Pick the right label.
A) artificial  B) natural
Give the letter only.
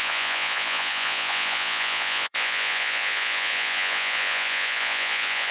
A